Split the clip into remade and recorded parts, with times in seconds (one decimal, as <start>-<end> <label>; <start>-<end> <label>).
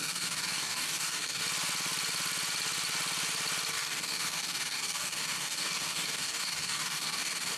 0.0-1.4 remade; 1.4-3.7 recorded; 3.7-7.6 remade